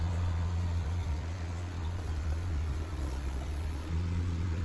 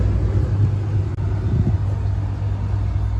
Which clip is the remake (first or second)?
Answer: first